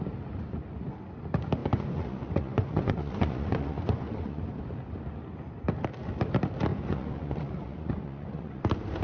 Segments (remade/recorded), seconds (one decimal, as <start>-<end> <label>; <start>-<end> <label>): 0.0-1.6 recorded; 1.6-4.4 remade; 4.4-6.7 recorded; 6.7-8.6 remade; 8.6-9.0 recorded